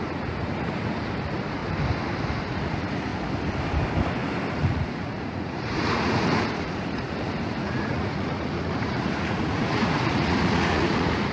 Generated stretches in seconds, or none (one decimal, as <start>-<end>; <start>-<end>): 0.0-1.6; 2.4-3.1; 4.5-11.3